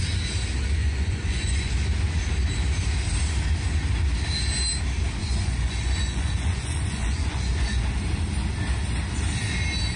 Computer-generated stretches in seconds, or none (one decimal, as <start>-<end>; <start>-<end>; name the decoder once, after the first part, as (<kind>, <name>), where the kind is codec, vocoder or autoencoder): 0.8-1.7 (vocoder, Vocos); 5.2-7.8